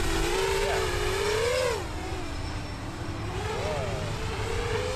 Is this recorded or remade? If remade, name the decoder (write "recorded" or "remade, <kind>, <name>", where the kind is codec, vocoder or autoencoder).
recorded